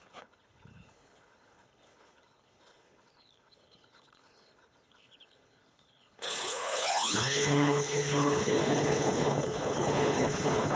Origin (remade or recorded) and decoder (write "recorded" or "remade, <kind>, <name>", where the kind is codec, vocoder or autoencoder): remade, codec, HILCodec